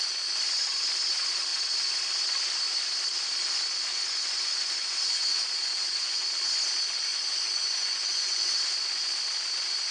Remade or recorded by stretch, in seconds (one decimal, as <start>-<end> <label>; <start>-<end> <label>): 0.0-3.9 recorded; 3.9-6.2 remade; 6.2-7.1 recorded; 7.1-8.5 remade; 8.5-9.9 recorded